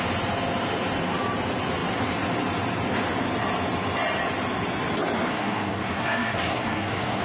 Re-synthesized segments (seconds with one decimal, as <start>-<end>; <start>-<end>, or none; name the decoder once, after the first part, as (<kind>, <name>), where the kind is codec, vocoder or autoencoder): 5.3-7.2 (codec, SNAC)